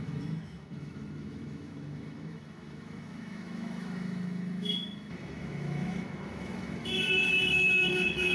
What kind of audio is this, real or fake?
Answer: fake